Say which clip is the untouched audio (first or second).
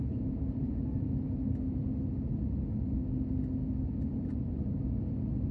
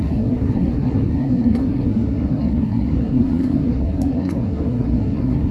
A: first